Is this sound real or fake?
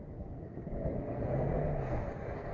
fake